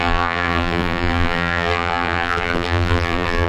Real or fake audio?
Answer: fake